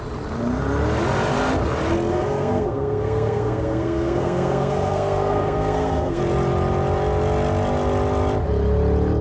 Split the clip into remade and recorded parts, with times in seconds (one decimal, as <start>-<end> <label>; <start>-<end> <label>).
0.0-2.1 recorded; 2.1-6.2 remade; 6.2-9.2 recorded